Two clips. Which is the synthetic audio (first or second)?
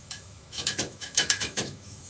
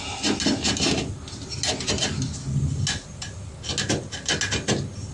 first